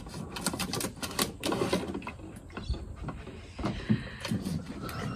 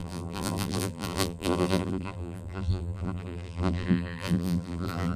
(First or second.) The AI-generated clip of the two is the second